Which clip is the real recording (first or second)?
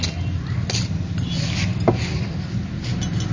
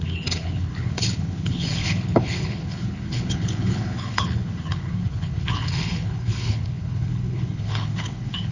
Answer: first